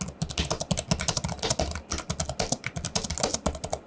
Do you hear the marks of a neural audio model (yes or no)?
no